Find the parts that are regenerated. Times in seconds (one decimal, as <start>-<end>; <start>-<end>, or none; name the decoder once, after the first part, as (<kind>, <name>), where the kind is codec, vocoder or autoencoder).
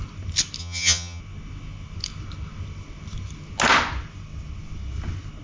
0.6-1.2 (vocoder, HiFi-GAN)